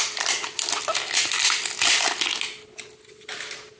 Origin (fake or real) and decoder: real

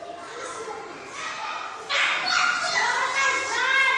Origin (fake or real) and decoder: real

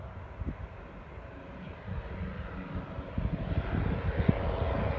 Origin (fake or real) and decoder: real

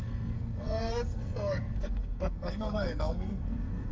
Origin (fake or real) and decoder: fake, codec, SNAC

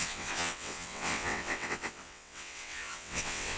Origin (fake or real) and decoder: fake, vocoder, WaveNeXt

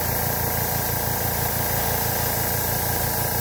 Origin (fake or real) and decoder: real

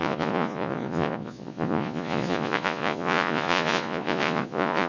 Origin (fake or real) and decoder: fake, vocoder, Vocos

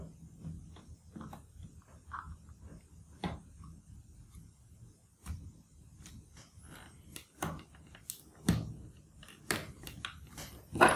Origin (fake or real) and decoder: real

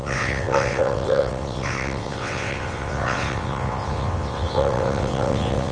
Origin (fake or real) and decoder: fake, vocoder, WaveNeXt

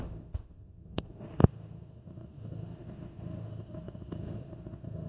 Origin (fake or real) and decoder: fake, autoencoder, DAC-VAE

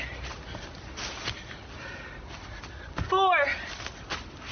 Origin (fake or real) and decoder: real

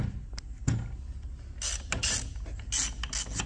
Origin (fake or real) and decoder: real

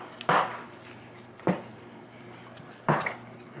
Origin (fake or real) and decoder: real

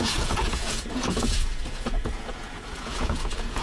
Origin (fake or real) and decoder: fake, vocoder, Vocos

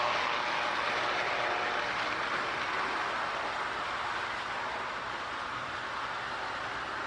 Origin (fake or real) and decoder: real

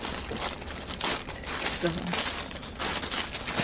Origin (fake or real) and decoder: real